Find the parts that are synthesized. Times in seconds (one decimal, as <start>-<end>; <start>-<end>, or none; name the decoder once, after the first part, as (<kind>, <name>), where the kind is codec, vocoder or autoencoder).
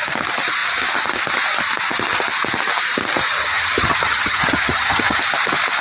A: 3.4-5.2 (vocoder, HiFi-GAN)